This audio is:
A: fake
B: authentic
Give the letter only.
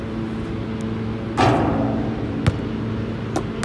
B